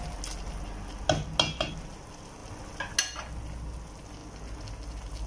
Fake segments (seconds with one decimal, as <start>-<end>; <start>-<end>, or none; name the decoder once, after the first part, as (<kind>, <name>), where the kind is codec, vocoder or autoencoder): none